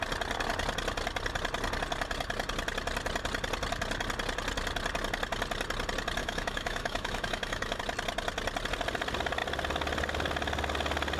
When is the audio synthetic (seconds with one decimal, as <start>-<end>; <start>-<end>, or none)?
6.2-7.8